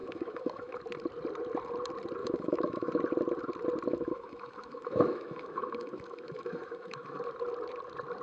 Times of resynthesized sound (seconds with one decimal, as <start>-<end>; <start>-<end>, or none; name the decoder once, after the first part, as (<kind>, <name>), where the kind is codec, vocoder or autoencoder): 0.0-0.8 (autoencoder, DAC-VAE); 2.2-2.9; 3.9-7.2